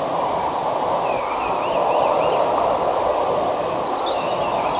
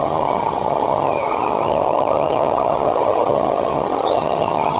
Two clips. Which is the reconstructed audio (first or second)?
second